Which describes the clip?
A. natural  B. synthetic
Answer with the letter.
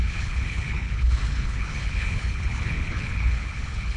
B